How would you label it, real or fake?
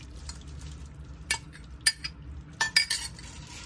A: real